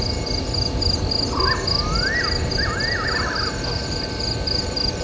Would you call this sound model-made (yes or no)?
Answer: no